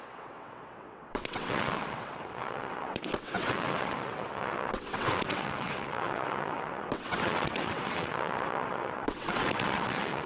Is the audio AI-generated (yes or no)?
yes